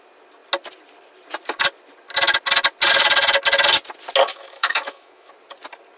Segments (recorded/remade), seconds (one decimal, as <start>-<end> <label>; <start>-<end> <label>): 0.0-4.3 recorded; 4.3-5.3 remade; 5.3-6.0 recorded